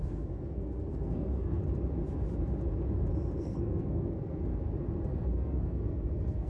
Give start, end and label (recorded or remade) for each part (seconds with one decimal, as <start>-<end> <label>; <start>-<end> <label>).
0.0-1.6 remade; 1.6-3.4 recorded; 3.4-4.5 remade; 4.5-5.0 recorded; 5.0-6.5 remade